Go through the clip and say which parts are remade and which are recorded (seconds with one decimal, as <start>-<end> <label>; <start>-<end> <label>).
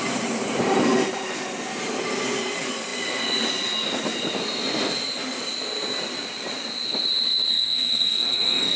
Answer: 0.0-7.5 recorded; 7.5-8.8 remade